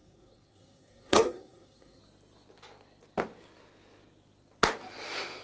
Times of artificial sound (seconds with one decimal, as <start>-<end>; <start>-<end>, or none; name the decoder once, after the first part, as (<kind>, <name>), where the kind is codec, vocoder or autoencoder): 0.0-2.0 (codec, SNAC)